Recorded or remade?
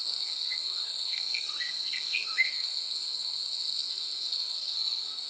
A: remade